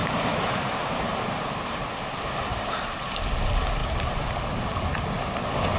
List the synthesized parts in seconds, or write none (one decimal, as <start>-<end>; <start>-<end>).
0.0-1.8; 2.5-3.2; 3.8-4.4